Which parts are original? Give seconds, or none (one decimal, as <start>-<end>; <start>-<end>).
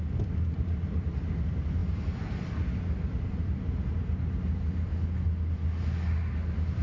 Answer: 0.0-1.8; 3.9-6.8